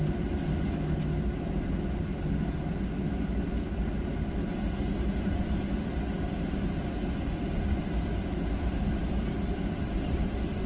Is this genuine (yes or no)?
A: yes